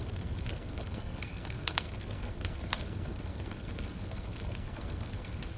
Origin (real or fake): fake